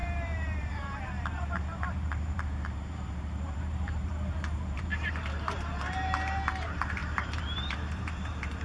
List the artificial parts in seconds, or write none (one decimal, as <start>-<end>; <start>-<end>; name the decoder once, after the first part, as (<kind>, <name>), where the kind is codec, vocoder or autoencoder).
0.0-8.6 (vocoder, BigVGAN v2)